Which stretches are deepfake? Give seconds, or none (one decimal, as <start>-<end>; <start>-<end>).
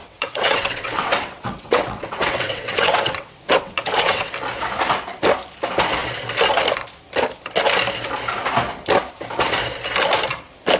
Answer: 0.0-4.3